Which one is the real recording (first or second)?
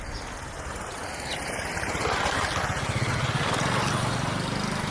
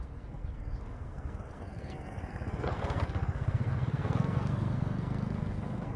first